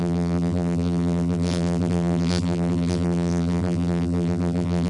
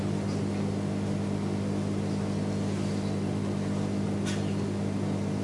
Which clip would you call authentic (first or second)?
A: second